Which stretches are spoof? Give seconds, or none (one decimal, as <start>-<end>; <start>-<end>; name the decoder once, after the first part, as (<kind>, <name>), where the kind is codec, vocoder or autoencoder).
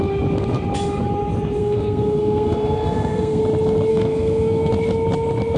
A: 1.6-3.4 (codec, SNAC); 3.9-4.7